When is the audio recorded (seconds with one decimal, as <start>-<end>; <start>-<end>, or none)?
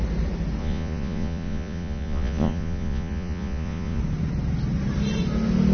0.0-0.6; 4.0-5.7